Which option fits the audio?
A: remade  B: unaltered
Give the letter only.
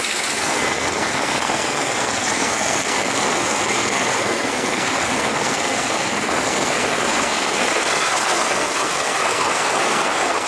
A